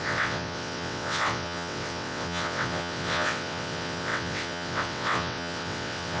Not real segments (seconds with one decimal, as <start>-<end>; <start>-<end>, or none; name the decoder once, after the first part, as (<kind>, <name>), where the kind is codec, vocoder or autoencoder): 0.0-6.2 (vocoder, WaveNeXt)